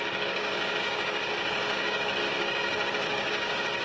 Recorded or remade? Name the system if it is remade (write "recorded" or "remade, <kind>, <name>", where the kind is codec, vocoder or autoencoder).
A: remade, codec, DAC